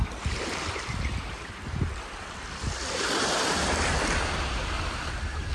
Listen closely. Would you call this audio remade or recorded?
remade